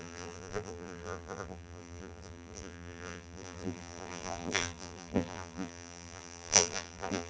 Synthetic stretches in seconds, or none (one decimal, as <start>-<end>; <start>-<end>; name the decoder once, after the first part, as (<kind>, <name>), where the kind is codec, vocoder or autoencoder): 0.0-7.3 (vocoder, BigVGAN v2)